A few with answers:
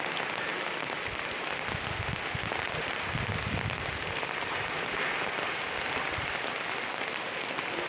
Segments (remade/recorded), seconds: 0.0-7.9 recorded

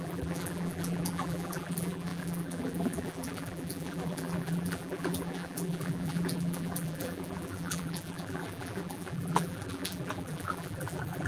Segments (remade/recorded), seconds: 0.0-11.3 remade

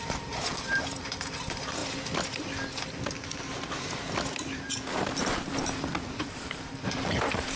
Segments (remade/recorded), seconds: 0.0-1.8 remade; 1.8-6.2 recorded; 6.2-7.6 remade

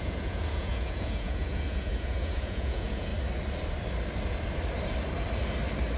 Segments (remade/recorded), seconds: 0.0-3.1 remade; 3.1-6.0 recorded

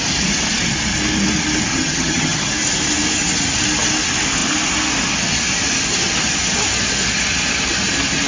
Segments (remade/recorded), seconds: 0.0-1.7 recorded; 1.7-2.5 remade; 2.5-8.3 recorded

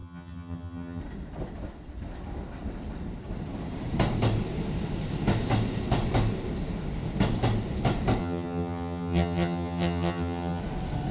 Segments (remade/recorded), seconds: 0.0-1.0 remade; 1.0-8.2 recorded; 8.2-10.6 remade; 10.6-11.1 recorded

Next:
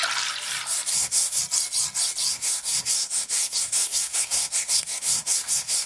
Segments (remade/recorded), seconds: 0.0-0.9 recorded; 0.9-1.4 remade; 1.4-2.3 recorded; 2.3-5.9 remade

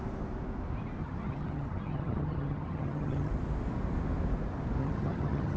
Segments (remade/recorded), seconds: 0.0-1.0 recorded; 1.0-3.3 remade; 3.3-4.8 recorded; 4.8-5.6 remade